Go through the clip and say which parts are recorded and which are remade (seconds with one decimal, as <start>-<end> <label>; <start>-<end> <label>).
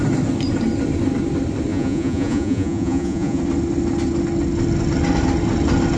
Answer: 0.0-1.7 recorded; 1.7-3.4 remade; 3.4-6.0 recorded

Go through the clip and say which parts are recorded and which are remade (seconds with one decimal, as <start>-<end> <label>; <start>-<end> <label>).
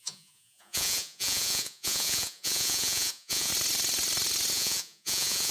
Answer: 0.0-3.5 remade; 3.5-4.5 recorded; 4.5-5.5 remade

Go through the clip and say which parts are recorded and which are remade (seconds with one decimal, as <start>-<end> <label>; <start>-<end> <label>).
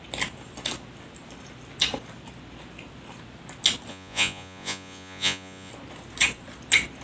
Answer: 0.0-3.9 recorded; 3.9-5.7 remade; 5.7-7.0 recorded